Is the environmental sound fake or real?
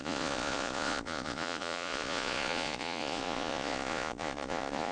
fake